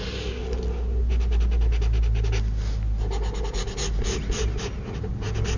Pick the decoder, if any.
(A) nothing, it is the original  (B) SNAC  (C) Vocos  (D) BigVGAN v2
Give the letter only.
A